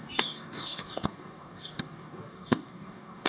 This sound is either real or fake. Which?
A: fake